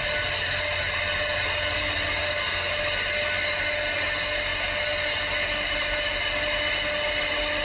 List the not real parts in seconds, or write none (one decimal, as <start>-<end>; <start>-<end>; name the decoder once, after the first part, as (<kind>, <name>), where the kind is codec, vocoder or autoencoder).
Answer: 2.2-2.7 (codec, DAC)